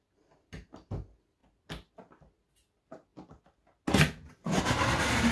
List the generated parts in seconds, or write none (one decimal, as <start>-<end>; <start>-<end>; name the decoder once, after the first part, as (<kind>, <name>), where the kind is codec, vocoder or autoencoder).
none